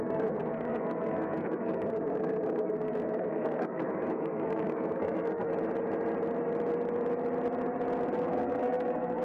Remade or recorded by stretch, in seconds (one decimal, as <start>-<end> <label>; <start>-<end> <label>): 0.0-5.5 remade; 5.5-8.1 recorded; 8.1-9.2 remade